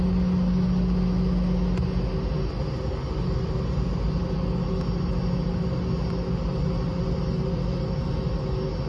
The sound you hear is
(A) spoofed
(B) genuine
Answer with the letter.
B